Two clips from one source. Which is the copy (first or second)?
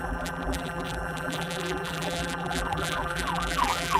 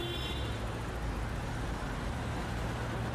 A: first